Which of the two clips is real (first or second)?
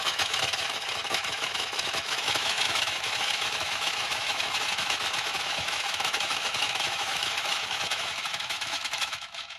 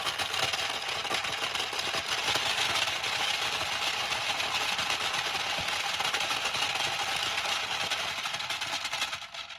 second